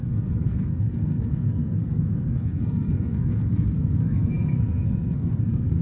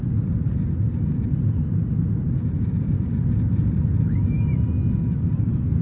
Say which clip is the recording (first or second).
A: second